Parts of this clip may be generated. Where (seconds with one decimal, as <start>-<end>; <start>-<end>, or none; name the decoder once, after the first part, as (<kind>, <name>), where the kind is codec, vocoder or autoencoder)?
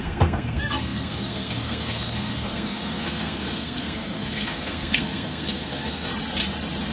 0.0-6.1 (codec, SNAC)